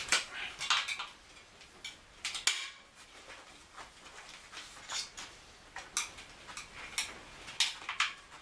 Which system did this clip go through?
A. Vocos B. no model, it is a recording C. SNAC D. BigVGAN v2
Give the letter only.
B